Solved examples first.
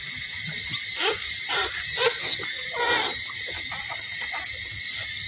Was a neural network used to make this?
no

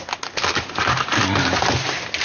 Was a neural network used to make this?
no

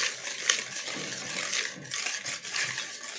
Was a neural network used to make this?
no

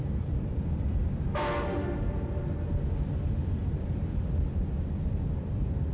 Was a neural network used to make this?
no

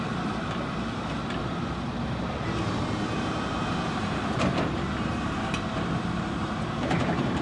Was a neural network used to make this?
yes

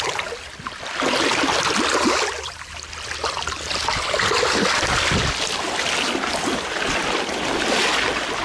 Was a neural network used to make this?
no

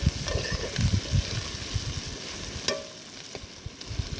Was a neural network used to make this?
no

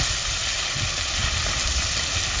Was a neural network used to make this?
no